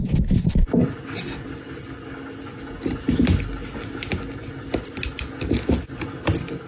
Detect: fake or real real